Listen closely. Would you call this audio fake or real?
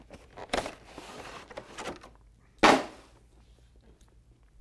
real